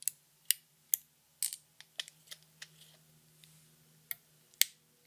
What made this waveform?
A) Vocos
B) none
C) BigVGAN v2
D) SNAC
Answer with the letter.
B